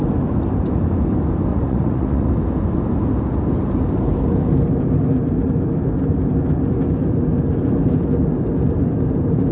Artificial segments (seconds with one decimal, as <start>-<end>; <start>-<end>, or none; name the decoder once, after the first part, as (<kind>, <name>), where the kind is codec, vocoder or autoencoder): 1.5-2.3 (vocoder, Vocos)